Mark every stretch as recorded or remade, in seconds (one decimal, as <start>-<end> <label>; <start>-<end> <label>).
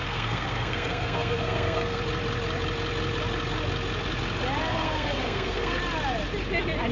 0.0-2.0 remade; 2.0-4.7 recorded; 4.7-5.8 remade; 5.8-6.9 recorded